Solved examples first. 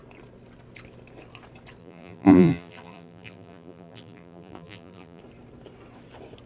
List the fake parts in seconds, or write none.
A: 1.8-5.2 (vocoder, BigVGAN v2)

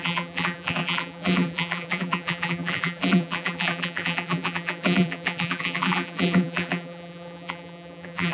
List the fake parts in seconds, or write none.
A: 0.0-8.3 (vocoder, BigVGAN v2)

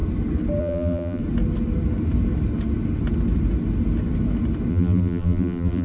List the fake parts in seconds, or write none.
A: 0.6-1.2 (vocoder, BigVGAN v2); 4.7-5.8